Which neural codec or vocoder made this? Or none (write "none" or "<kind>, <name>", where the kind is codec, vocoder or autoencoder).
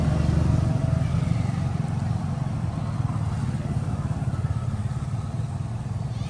none